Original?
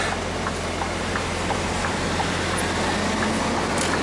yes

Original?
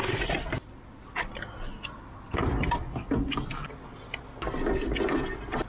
yes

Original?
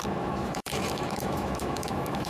no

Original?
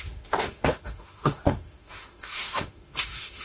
no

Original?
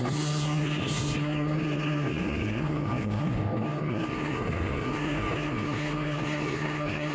no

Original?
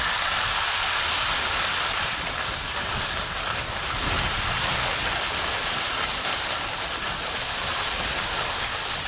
yes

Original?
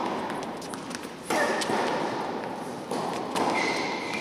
yes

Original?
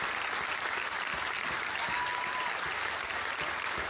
yes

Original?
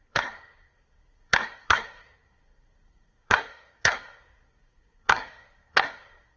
no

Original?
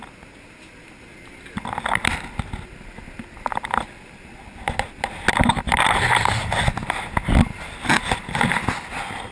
yes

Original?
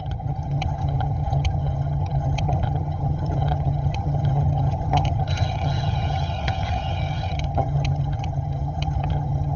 no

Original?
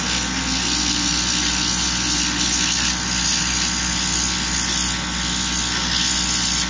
yes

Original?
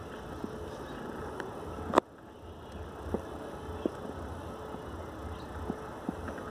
yes